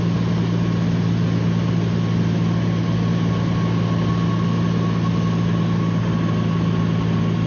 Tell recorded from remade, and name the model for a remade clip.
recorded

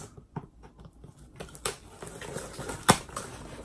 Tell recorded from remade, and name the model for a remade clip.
recorded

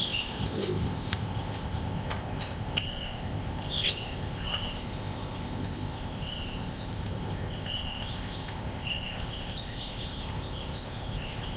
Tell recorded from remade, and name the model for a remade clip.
remade, codec, ZipCodec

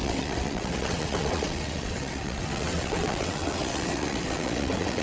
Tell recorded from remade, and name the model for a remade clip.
remade, vocoder, WaveNeXt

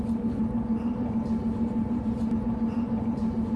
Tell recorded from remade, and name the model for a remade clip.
remade, vocoder, BigVGAN v2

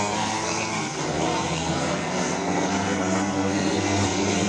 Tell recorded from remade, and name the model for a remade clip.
remade, codec, SNAC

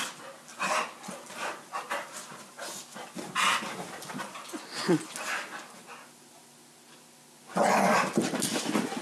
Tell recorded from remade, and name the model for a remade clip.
recorded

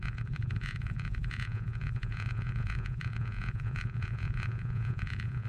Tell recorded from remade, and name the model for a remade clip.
remade, vocoder, Vocos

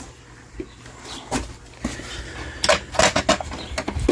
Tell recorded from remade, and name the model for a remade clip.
recorded